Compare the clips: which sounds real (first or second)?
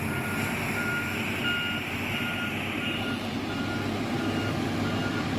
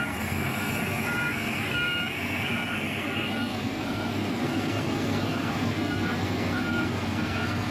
first